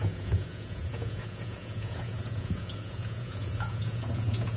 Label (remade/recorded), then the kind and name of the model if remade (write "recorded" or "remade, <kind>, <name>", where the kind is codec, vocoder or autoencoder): remade, vocoder, Vocos